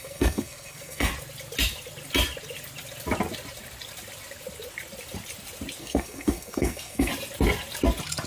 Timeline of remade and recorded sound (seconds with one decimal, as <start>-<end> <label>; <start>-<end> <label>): 0.0-1.1 remade; 1.1-5.8 recorded; 5.8-7.1 remade; 7.1-8.3 recorded